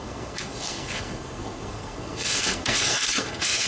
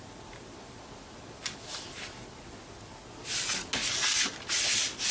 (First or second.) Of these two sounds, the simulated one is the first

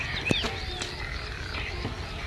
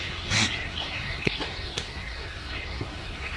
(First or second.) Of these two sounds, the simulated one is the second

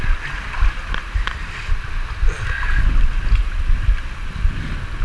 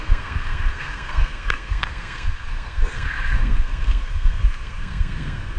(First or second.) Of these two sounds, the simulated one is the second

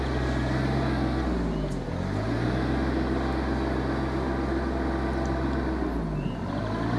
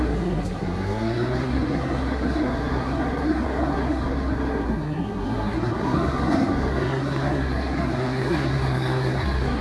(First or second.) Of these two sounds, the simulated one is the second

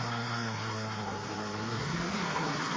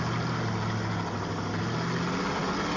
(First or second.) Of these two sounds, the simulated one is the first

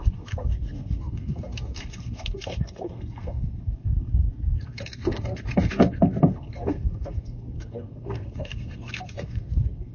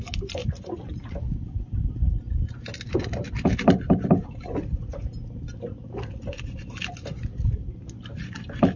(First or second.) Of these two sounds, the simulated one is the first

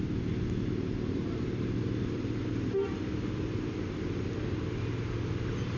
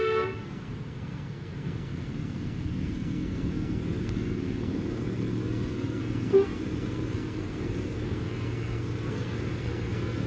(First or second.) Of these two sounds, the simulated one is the second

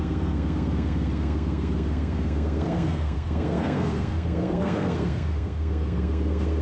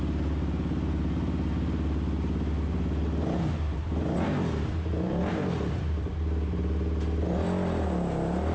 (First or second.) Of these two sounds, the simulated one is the first